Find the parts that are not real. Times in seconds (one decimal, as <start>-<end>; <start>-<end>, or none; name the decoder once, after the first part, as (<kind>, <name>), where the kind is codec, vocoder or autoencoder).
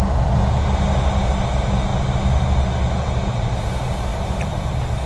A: none